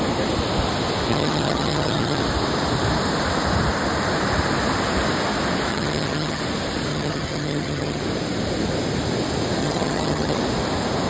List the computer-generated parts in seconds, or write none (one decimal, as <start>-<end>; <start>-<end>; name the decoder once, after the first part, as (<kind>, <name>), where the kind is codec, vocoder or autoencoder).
1.1-2.2 (vocoder, HiFi-GAN); 5.7-6.4; 6.9-8.0; 9.6-10.4